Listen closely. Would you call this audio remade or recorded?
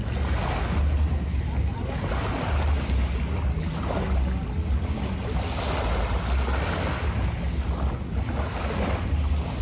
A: recorded